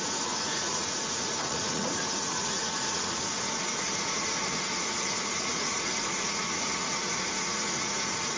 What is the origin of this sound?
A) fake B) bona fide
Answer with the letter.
A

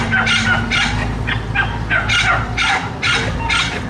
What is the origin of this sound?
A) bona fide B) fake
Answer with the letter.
A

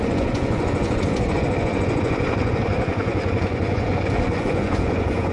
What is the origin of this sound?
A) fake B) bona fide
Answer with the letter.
A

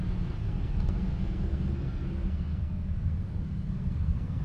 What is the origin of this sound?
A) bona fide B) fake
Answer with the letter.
B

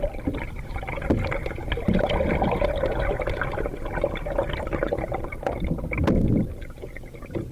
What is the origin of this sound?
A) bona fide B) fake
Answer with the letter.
A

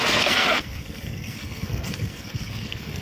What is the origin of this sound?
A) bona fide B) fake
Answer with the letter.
B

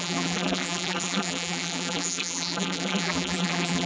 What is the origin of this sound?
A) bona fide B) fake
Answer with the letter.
B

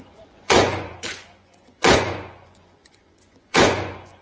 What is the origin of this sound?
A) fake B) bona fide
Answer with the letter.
A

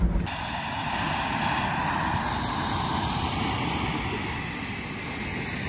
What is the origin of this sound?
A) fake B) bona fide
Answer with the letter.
B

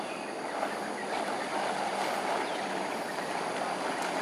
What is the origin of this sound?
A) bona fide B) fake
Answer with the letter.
A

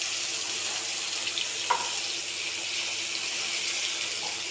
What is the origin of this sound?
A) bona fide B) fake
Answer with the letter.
A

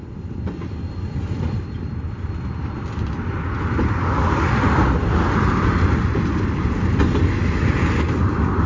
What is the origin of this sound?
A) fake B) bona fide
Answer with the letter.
B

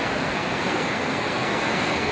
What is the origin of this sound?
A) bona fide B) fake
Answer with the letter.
B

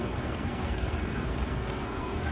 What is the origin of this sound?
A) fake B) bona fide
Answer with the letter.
A